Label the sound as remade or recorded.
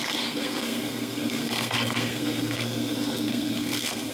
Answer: remade